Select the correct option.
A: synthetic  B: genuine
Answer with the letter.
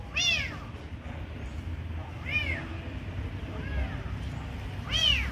B